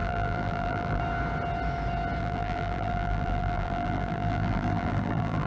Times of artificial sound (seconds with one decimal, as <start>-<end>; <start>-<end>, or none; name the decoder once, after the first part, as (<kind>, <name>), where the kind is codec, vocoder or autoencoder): 0.0-1.0 (vocoder, BigVGAN v2); 2.2-5.5